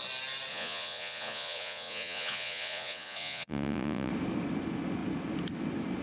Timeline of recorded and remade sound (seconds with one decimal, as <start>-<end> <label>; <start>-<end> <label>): 0.0-0.5 recorded; 0.5-4.1 remade; 4.1-6.0 recorded